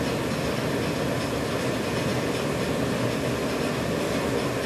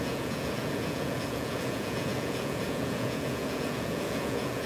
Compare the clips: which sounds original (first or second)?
first